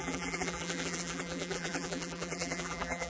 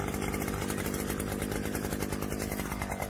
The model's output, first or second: first